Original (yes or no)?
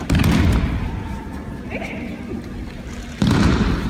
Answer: yes